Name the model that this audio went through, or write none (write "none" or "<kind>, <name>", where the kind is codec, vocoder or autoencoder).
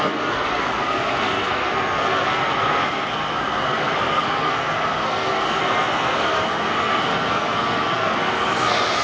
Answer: codec, SNAC